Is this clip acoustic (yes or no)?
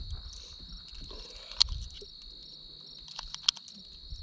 yes